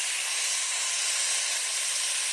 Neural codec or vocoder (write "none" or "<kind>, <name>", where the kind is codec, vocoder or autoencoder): none